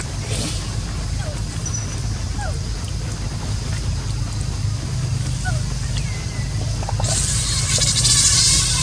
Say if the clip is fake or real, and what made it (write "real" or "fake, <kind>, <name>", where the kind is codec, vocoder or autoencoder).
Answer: real